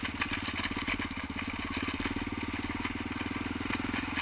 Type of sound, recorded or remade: recorded